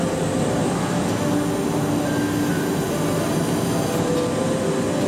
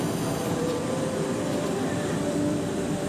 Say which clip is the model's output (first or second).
second